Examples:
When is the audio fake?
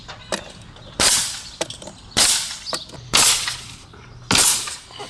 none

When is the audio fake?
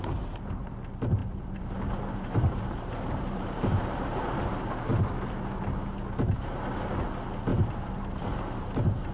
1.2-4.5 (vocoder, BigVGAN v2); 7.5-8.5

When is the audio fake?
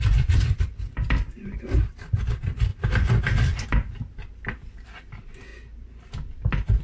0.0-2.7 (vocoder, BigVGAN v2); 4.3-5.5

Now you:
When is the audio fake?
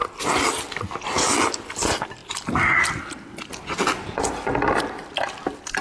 2.2-5.8 (vocoder, BigVGAN v2)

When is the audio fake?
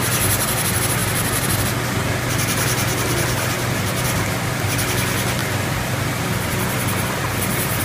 5.4-7.8 (vocoder, BigVGAN v2)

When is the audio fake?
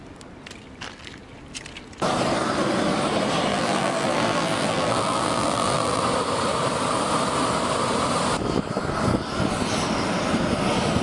3.5-6.0 (vocoder, BigVGAN v2)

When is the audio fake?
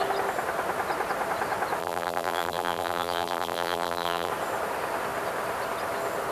1.8-4.3 (vocoder, BigVGAN v2)